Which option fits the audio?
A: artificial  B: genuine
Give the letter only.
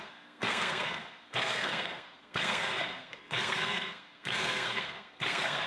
A